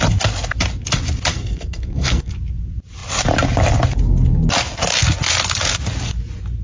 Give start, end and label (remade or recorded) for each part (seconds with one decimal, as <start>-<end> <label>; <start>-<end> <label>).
0.0-1.3 recorded; 1.3-2.3 remade; 2.3-6.6 recorded